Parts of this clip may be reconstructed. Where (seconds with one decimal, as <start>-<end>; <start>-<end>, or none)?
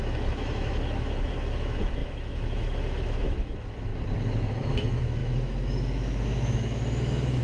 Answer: 0.0-3.9; 4.5-7.4